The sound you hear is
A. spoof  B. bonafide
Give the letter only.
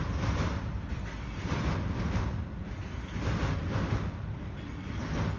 B